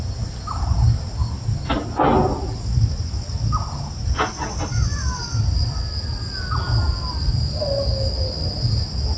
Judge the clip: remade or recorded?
recorded